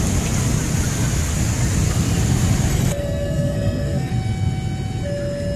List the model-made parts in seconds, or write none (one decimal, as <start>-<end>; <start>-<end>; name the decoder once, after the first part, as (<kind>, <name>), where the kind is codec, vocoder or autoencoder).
2.7-4.1 (codec, SNAC)